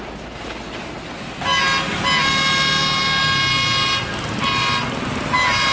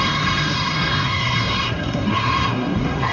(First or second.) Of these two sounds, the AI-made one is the second